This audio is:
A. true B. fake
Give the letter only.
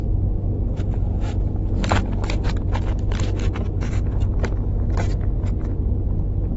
A